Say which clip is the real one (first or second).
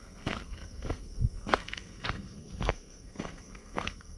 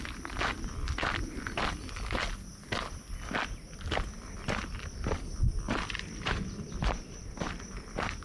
second